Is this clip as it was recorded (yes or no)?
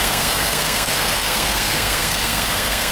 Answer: no